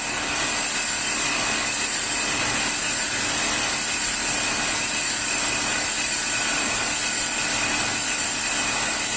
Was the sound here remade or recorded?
recorded